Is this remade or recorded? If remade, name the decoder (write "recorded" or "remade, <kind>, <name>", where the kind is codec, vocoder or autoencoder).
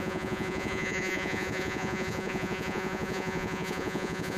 remade, vocoder, Vocos